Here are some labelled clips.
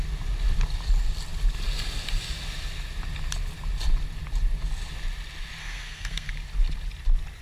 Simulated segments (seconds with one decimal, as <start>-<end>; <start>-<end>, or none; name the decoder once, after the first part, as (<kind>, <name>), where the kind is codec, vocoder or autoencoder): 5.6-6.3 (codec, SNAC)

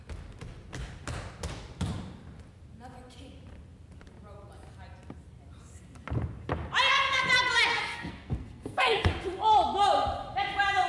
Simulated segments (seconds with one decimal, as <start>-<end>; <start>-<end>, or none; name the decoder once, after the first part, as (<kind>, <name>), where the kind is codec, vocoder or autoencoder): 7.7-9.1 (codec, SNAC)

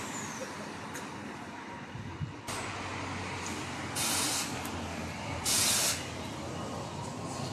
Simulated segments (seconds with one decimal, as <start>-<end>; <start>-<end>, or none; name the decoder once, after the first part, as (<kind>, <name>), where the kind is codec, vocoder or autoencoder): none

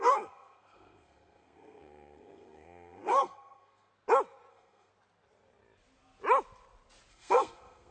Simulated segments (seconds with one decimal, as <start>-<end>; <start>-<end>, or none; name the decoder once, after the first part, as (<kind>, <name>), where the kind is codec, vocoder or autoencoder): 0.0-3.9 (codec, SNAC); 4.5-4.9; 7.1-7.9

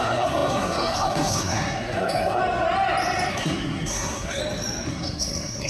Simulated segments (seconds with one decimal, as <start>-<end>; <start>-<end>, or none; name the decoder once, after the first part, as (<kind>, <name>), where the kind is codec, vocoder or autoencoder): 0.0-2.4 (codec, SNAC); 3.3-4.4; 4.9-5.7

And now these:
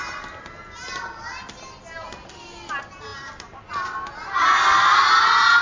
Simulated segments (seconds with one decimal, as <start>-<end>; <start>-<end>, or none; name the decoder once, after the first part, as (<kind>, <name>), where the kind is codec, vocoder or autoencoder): none

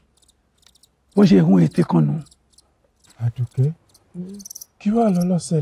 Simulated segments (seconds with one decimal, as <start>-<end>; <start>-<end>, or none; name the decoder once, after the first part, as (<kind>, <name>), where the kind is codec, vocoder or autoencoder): none

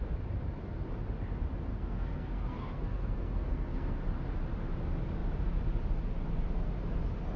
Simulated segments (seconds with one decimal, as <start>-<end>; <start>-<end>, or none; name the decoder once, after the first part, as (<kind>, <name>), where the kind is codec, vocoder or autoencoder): 1.7-4.0 (codec, SNAC)